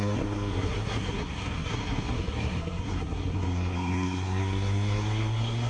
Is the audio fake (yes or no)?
yes